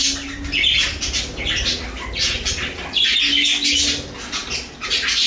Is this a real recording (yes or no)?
yes